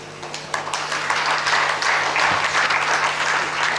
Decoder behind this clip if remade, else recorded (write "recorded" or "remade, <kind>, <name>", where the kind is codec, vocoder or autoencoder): recorded